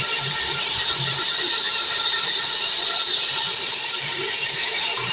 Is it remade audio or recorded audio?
remade